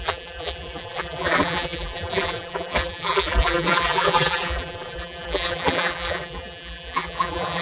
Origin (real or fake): fake